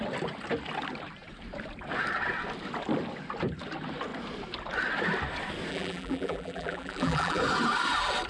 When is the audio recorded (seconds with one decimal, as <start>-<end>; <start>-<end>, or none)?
0.0-5.7; 7.4-8.3